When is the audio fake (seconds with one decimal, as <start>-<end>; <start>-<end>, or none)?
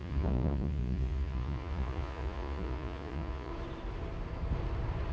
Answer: 0.0-3.5